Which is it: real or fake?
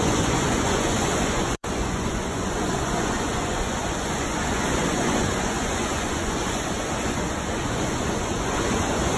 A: fake